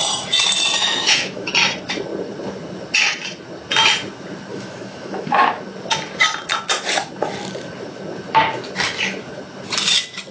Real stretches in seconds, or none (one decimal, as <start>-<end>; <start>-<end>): 0.0-0.8; 1.5-4.5; 5.6-10.3